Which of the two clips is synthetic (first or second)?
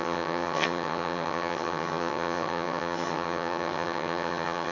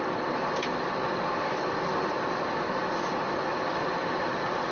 first